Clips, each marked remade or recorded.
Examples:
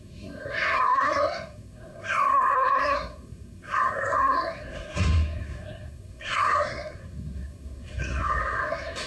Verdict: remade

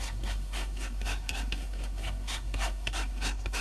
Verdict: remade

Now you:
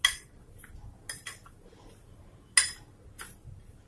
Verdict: recorded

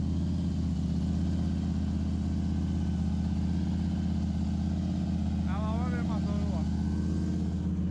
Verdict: recorded